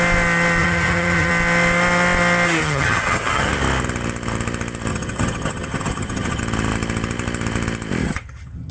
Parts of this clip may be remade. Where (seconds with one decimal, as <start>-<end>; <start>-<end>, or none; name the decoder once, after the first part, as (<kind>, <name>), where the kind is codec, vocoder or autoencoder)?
0.6-1.3 (vocoder, HiFi-GAN); 2.6-3.5; 4.9-6.4; 8.0-8.7